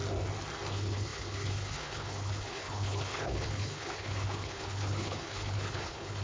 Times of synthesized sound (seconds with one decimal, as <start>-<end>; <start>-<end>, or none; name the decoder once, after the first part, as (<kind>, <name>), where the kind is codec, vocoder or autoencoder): 0.7-6.2 (codec, HILCodec)